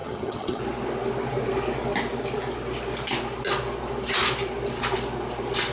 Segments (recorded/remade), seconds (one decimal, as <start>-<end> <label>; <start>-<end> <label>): 0.0-0.6 remade; 0.6-5.7 recorded